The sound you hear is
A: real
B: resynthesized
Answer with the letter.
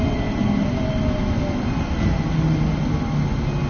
A